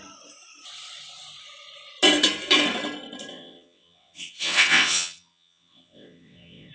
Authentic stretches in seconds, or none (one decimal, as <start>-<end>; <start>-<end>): 0.0-3.3